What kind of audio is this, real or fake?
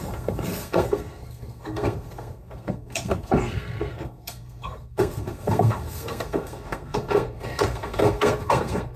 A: fake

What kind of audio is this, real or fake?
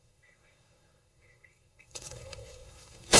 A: fake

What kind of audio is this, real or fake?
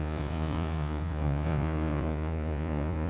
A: fake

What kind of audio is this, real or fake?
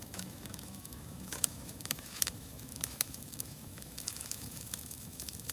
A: fake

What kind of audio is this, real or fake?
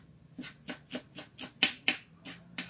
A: real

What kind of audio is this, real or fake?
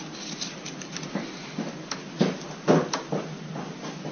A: real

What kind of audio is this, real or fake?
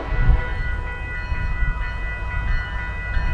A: real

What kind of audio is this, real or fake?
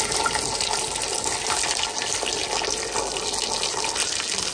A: real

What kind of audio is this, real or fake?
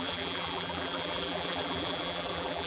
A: fake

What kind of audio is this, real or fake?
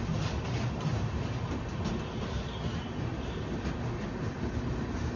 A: real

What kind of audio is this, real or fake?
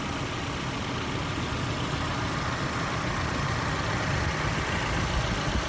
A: real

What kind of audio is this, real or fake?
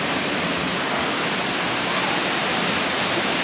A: real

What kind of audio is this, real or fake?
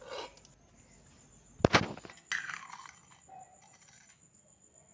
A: real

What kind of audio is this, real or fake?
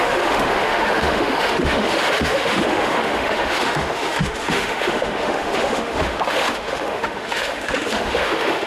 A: fake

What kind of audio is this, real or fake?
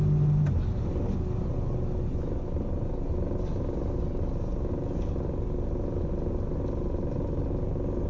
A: real